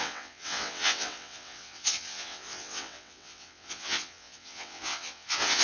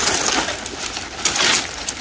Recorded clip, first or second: second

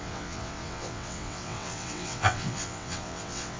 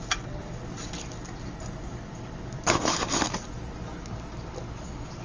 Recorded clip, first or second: second